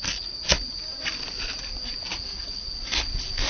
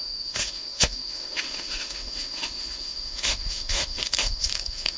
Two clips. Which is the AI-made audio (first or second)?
second